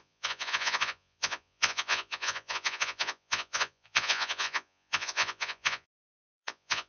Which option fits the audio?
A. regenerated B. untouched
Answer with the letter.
A